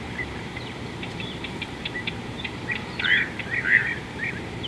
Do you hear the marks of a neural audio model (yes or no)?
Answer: yes